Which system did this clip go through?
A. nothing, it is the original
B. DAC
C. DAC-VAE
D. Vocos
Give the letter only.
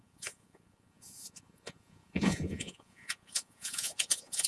D